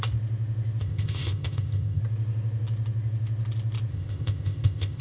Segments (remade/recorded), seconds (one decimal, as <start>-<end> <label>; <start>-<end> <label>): 0.0-0.8 recorded; 0.8-2.0 remade; 2.0-3.9 recorded; 3.9-5.0 remade

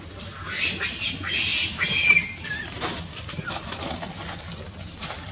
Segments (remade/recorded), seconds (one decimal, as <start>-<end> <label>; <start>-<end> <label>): 0.0-5.3 recorded

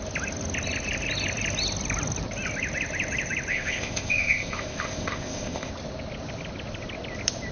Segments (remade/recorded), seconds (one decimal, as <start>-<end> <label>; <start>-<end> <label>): 0.0-3.5 recorded; 3.5-5.7 remade; 5.7-7.5 recorded

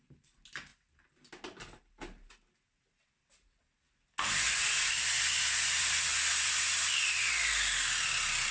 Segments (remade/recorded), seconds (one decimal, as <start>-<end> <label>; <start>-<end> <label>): 0.0-8.5 recorded

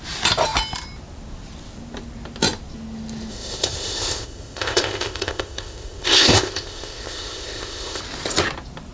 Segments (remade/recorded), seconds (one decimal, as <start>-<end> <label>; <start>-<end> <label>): 0.0-3.3 recorded; 3.3-8.0 remade; 8.0-8.9 recorded

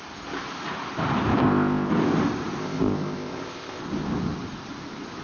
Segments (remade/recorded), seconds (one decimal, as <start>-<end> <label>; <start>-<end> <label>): 0.0-1.4 recorded; 1.4-1.9 remade; 1.9-2.6 recorded; 2.6-3.8 remade; 3.8-5.2 recorded

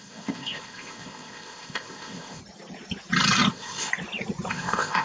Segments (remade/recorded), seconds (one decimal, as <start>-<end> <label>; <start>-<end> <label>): 0.0-2.4 remade; 2.4-3.5 recorded; 3.5-3.9 remade; 3.9-4.5 recorded; 4.5-5.0 remade